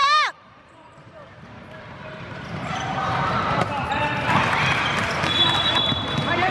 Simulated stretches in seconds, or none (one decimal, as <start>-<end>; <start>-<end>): 0.0-3.9